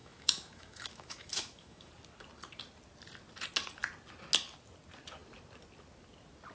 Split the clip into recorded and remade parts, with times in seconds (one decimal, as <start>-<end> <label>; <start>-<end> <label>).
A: 0.0-1.9 remade; 1.9-6.5 recorded